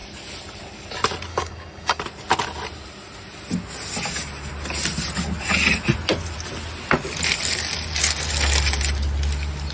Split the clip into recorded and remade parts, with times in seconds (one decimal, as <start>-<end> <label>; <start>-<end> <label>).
0.0-1.3 recorded; 1.3-2.0 remade; 2.0-9.7 recorded